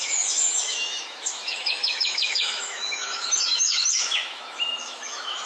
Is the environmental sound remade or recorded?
remade